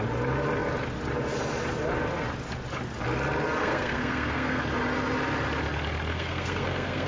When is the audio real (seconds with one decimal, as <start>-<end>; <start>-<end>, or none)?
0.0-3.6; 4.6-6.1